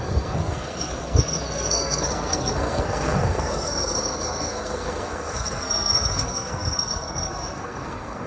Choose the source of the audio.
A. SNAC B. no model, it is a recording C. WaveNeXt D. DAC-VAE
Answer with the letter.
A